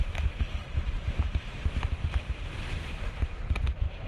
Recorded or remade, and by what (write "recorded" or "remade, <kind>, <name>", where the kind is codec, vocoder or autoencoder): remade, vocoder, BigVGAN v2